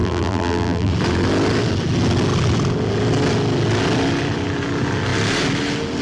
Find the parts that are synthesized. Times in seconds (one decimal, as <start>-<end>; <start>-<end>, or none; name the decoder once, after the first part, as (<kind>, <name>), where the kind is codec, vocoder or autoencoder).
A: 0.0-0.9 (vocoder, BigVGAN v2)